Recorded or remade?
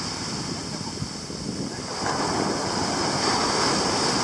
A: recorded